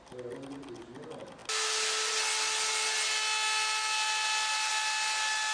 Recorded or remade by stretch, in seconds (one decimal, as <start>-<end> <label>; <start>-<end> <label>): 0.0-5.5 recorded